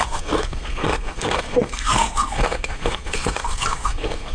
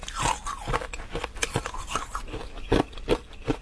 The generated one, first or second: first